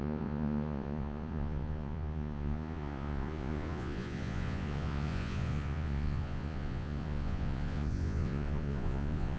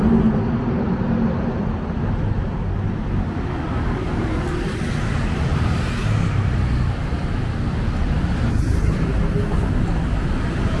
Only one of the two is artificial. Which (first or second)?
first